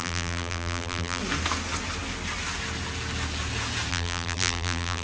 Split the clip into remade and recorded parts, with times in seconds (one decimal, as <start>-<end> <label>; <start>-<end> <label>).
0.0-1.2 remade; 1.2-3.9 recorded; 3.9-5.0 remade